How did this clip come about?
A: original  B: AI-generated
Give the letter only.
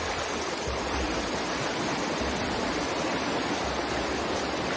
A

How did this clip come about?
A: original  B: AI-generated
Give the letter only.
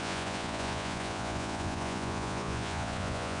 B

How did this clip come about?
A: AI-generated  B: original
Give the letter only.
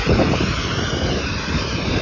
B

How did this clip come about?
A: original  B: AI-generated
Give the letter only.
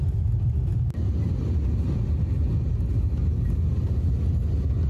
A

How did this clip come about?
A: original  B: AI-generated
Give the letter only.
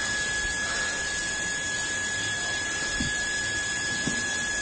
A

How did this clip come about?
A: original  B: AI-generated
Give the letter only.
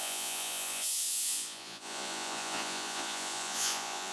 B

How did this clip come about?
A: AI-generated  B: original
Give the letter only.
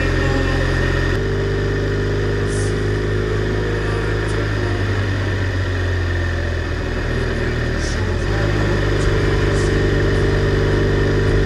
B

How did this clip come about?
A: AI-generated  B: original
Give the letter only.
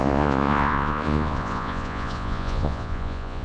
A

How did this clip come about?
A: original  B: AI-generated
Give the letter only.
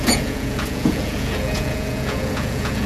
B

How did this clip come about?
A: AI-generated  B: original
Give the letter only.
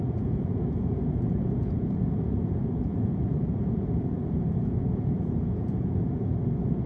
A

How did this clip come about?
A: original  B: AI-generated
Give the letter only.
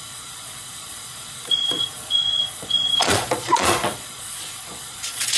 B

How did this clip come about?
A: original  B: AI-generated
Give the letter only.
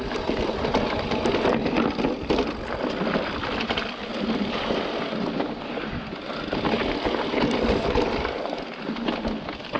A